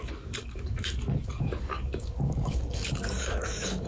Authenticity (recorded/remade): remade